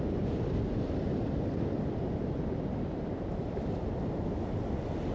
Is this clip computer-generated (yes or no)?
no